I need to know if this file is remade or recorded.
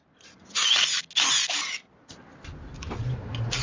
recorded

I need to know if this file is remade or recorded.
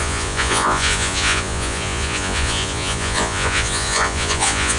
remade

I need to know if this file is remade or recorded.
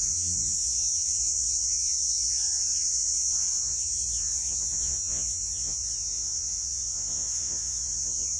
remade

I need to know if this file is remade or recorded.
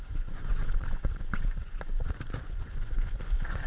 remade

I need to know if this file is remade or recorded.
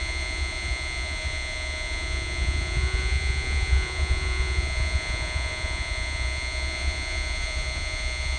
remade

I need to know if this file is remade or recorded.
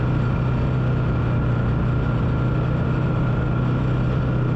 recorded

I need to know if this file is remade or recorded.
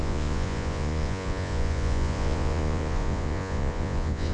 remade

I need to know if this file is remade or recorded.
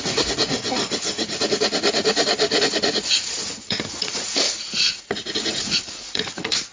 remade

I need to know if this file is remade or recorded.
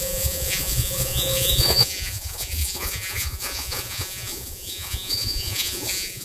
remade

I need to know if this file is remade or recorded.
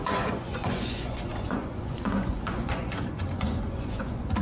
remade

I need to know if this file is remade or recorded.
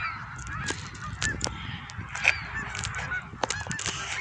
recorded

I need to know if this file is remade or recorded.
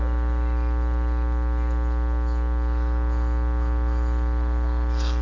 recorded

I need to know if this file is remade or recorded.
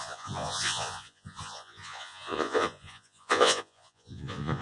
remade